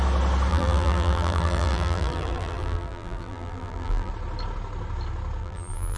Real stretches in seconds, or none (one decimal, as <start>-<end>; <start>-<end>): 0.0-0.5; 4.1-5.4